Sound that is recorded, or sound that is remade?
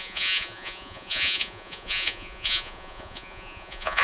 remade